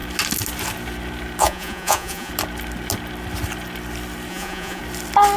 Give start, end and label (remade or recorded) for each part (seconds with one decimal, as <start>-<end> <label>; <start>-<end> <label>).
0.0-1.4 recorded; 1.4-2.3 remade; 2.3-4.3 recorded; 4.3-4.8 remade; 4.8-5.4 recorded